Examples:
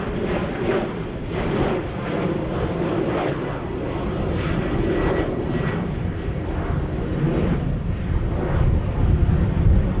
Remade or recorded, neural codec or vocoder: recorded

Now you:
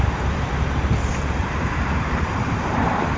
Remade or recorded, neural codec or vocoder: remade, vocoder, BigVGAN v2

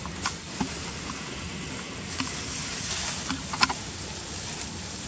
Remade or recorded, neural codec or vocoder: recorded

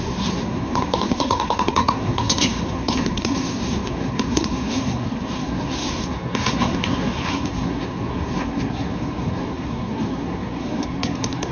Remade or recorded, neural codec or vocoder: remade, codec, SNAC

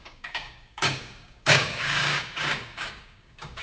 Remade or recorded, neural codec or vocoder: remade, codec, DAC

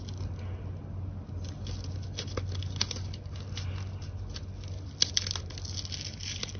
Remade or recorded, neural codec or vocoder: recorded